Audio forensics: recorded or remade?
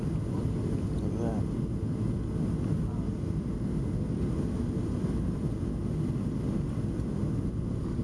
recorded